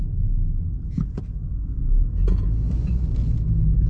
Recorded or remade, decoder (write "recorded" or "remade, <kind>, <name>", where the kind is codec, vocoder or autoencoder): recorded